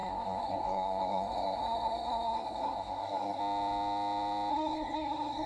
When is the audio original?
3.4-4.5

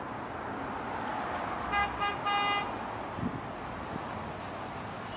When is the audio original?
0.0-5.2

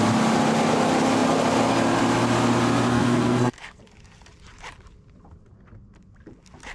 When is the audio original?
0.0-2.9; 3.8-6.7

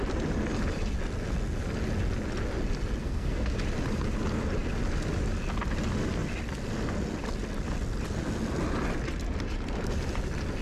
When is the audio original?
0.0-3.0; 3.6-10.6

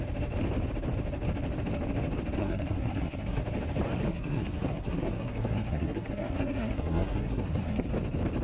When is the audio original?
0.0-2.4; 3.4-4.1; 7.9-8.4

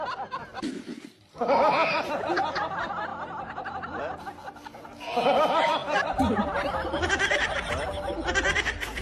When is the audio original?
0.0-9.0

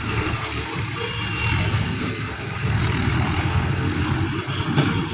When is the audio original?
0.7-1.7; 2.8-3.4; 4.0-5.1